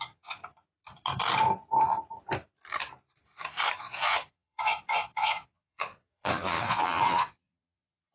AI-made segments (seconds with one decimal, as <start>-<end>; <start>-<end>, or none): 0.0-0.4; 3.8-8.1